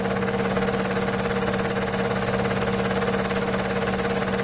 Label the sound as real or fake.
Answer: real